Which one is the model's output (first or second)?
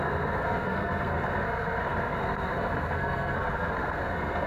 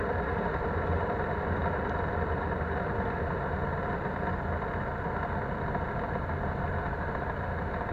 first